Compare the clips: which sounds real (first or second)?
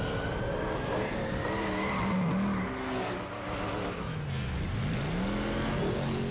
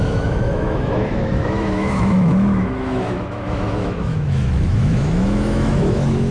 first